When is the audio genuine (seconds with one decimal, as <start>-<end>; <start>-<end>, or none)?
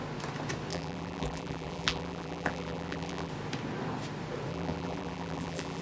0.0-0.7; 3.3-4.5